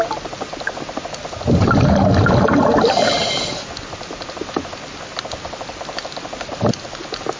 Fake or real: real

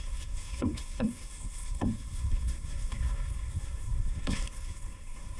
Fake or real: fake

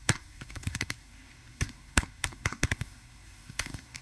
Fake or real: fake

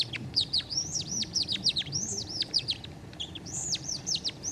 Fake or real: fake